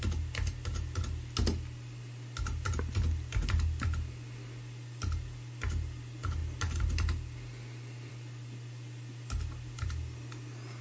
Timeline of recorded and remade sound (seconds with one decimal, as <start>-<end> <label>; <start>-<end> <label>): 0.0-10.8 recorded